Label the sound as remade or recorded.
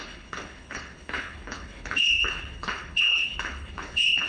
remade